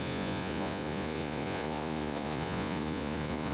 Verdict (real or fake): fake